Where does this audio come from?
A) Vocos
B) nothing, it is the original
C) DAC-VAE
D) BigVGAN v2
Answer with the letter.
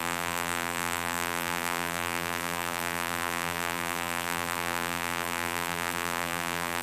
D